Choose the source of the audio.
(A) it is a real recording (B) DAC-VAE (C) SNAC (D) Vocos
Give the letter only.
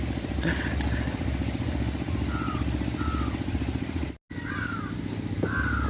A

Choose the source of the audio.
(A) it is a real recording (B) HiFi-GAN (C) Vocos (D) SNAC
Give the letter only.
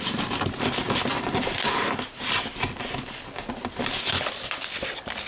A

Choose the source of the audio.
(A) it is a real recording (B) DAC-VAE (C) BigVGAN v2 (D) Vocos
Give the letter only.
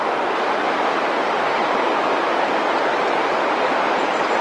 A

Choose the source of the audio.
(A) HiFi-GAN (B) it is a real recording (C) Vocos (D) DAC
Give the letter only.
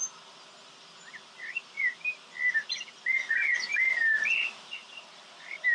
B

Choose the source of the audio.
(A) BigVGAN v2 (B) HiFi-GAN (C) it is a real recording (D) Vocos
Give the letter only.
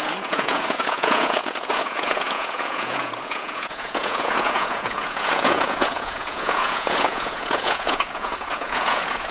D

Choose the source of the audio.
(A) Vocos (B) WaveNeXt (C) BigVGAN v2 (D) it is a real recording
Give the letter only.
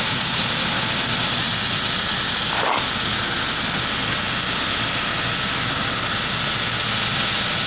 D